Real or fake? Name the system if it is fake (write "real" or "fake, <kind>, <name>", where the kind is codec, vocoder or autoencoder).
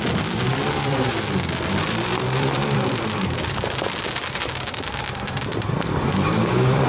fake, vocoder, BigVGAN v2